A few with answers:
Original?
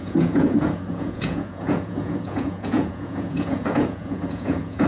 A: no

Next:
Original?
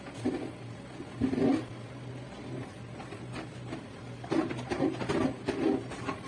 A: yes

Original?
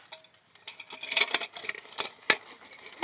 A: yes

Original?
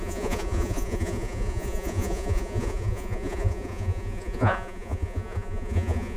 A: no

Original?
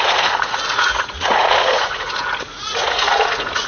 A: no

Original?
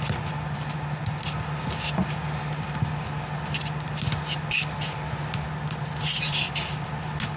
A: yes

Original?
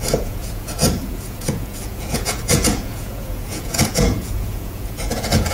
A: no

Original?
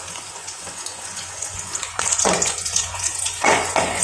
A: no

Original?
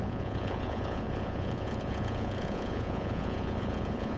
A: no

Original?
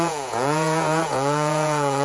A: no